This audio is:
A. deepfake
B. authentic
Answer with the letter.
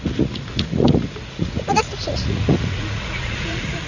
A